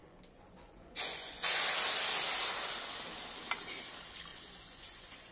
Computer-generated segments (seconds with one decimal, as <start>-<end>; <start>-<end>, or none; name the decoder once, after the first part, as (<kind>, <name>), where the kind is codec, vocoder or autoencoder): 0.0-1.6 (vocoder, Vocos); 4.3-5.3